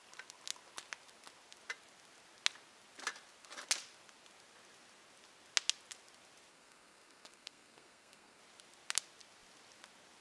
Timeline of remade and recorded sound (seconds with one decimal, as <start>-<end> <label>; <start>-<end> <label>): 0.0-6.5 recorded; 6.5-8.4 remade; 8.4-10.2 recorded